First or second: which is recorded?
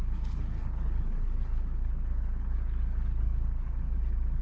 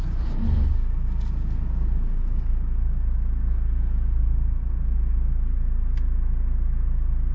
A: second